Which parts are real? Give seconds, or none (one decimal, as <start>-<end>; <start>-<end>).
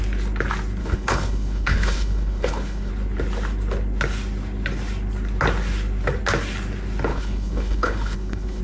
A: 0.0-0.8; 2.9-7.1